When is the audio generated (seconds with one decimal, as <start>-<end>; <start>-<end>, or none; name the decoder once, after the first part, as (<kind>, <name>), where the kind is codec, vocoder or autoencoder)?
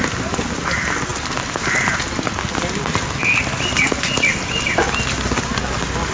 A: none